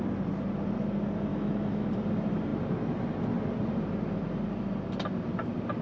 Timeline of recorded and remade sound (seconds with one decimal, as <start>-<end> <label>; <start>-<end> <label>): 0.0-1.3 recorded; 1.3-1.9 remade; 1.9-5.8 recorded

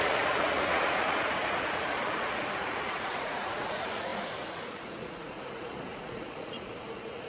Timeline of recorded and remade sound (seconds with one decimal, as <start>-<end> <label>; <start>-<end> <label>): 0.0-7.3 remade

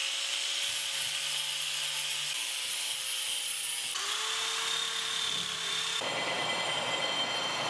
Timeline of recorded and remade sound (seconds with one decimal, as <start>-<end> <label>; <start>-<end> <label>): 0.0-7.7 recorded

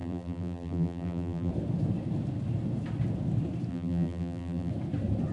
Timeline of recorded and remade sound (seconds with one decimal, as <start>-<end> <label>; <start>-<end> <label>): 0.0-1.5 remade; 1.5-3.7 recorded; 3.7-4.7 remade; 4.7-5.3 recorded

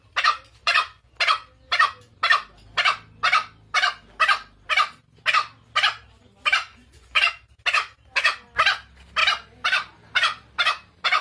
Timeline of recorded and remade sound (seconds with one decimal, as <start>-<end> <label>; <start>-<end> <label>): 0.0-0.6 recorded; 0.6-1.1 remade; 1.1-6.7 recorded; 6.7-7.3 remade; 7.3-11.2 recorded

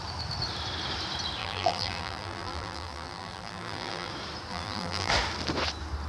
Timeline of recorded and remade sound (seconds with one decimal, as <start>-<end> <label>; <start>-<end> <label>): 0.0-1.4 recorded; 1.4-4.1 remade; 4.1-4.5 recorded; 4.5-5.1 remade; 5.1-6.1 recorded